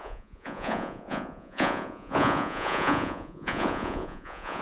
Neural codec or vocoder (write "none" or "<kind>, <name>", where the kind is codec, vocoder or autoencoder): vocoder, Vocos